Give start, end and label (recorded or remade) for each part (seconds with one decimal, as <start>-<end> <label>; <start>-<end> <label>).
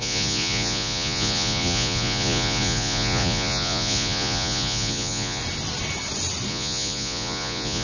0.0-5.4 remade; 5.4-6.5 recorded; 6.5-7.8 remade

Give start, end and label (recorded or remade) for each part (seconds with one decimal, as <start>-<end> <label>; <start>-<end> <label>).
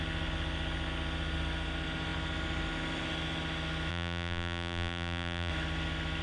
0.0-3.9 recorded; 3.9-5.5 remade; 5.5-6.2 recorded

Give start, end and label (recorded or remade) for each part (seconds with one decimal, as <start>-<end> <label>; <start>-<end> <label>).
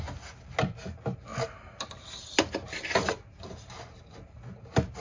0.0-5.0 recorded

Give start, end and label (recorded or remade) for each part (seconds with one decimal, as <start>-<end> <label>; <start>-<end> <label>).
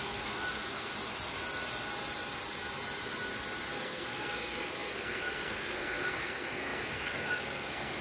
0.0-0.9 remade; 0.9-3.7 recorded; 3.7-8.0 remade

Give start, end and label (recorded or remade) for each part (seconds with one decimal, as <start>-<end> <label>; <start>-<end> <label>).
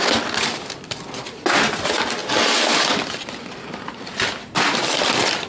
0.0-5.5 recorded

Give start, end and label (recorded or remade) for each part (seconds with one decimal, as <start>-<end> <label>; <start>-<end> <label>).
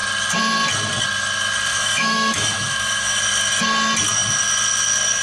0.0-1.7 recorded; 1.7-3.2 remade; 3.2-5.2 recorded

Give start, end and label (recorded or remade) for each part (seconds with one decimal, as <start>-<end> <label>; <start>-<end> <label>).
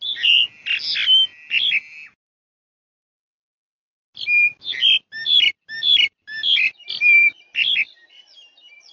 0.0-8.9 recorded